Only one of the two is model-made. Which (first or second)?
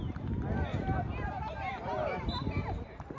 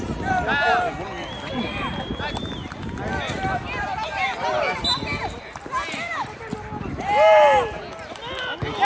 first